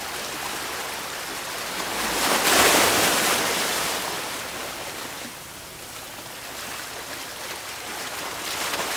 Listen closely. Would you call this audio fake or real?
fake